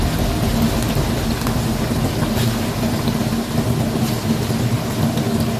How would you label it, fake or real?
real